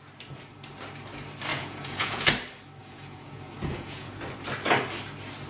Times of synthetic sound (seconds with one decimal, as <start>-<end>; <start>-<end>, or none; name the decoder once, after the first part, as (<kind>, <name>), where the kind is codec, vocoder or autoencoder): 1.5-2.3 (vocoder, Vocos); 2.8-4.2